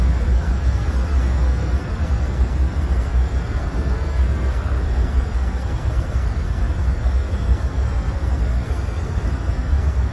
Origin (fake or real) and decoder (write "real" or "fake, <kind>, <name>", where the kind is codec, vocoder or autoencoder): fake, codec, SNAC